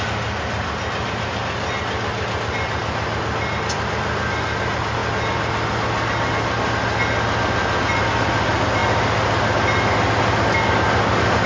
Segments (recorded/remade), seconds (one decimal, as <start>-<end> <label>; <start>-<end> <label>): 0.0-11.5 recorded